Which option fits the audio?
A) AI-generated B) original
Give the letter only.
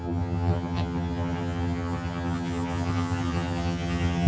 A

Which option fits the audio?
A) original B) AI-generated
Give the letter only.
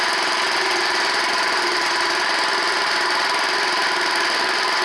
A